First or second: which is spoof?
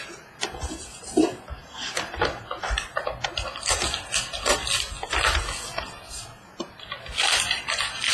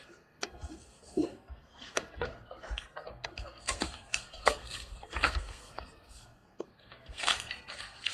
second